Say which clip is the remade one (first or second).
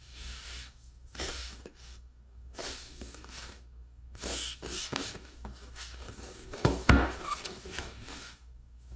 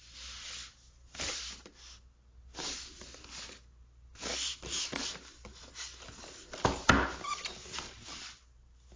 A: first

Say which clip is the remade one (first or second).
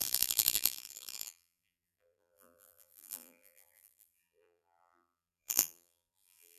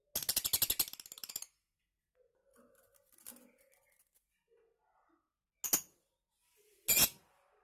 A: first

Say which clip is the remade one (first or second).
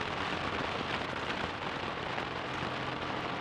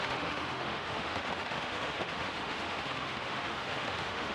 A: second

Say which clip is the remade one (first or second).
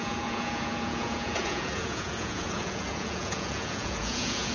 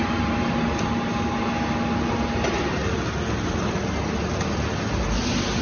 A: first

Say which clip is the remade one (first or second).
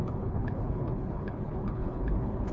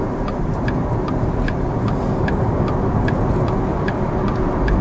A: first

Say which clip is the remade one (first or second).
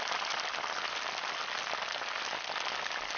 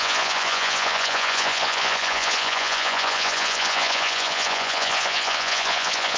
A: second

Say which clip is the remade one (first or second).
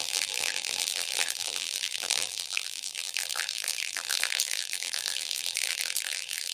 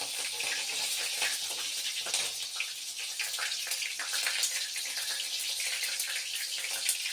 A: first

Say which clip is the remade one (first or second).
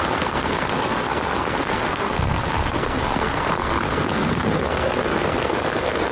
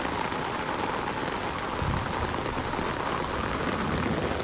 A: first